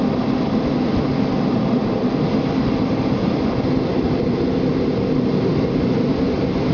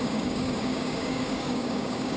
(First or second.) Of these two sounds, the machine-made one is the second